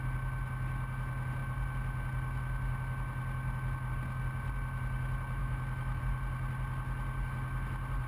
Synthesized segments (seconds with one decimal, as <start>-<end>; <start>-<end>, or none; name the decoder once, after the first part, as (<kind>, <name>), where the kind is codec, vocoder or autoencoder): 5.4-6.0 (autoencoder, DAC-VAE)